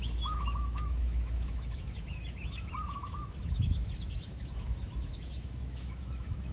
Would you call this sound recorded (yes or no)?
no